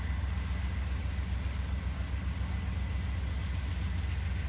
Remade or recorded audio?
recorded